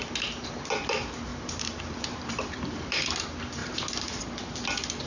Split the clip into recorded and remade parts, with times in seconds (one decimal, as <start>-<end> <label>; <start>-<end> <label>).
0.0-1.3 recorded; 1.3-3.2 remade; 3.2-3.6 recorded; 3.6-4.2 remade; 4.2-5.1 recorded